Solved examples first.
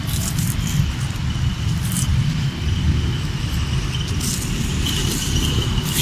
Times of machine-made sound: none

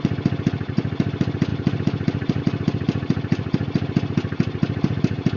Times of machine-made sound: none

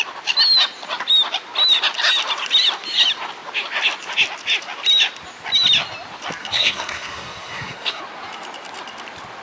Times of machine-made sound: 6.4-8.0 (codec, SNAC)